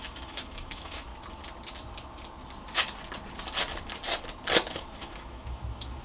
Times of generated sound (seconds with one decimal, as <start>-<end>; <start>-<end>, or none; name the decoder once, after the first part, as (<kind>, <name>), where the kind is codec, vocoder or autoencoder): 0.0-1.1 (autoencoder, DAC-VAE); 4.7-6.0